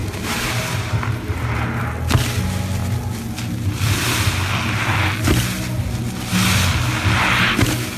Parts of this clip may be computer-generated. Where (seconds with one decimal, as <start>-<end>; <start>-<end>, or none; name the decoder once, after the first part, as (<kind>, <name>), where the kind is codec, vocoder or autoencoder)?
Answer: 0.0-1.9 (vocoder, BigVGAN v2)